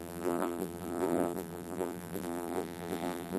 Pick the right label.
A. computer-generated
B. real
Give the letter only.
A